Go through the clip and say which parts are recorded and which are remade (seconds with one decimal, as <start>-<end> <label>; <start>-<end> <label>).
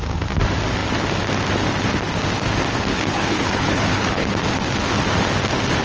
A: 0.0-2.9 recorded; 2.9-4.3 remade; 4.3-5.8 recorded